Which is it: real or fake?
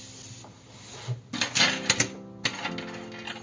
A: real